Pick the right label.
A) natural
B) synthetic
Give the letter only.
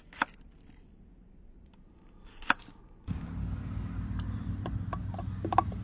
A